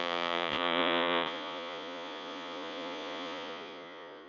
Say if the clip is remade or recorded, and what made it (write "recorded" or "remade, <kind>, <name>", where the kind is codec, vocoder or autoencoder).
remade, vocoder, Vocos